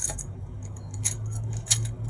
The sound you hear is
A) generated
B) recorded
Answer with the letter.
A